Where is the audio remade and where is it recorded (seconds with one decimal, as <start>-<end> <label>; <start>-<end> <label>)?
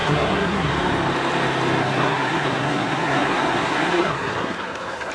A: 0.0-0.7 remade; 0.7-1.8 recorded; 1.8-5.1 remade